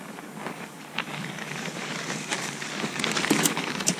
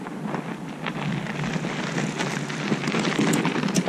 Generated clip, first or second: first